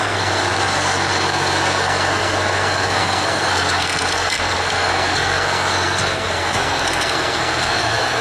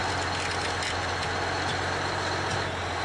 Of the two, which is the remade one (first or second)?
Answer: first